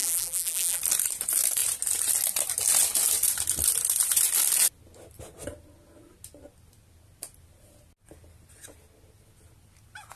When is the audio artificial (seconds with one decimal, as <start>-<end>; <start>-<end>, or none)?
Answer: 0.0-0.8